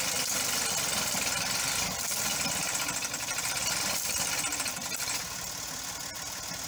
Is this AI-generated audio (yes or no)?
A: no